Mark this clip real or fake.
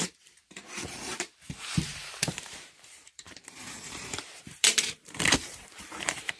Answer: fake